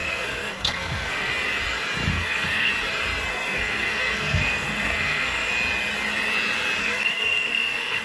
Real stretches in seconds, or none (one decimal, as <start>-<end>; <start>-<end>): 1.3-2.1; 2.7-3.3; 5.5-6.8